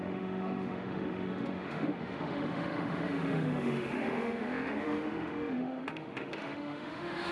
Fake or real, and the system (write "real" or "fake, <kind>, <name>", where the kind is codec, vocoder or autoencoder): fake, autoencoder, DAC-VAE